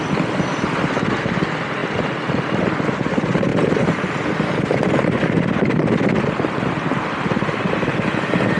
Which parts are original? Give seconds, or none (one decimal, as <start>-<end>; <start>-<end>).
0.0-8.6